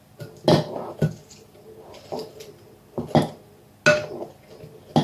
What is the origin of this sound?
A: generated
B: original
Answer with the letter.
B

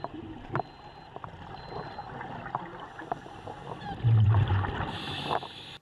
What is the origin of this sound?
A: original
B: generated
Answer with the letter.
A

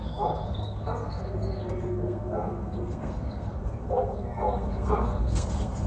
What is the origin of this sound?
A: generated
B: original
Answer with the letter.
A